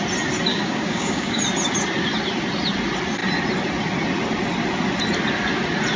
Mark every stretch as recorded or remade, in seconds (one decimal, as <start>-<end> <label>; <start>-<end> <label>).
0.0-0.5 recorded; 0.5-1.4 remade; 1.4-6.0 recorded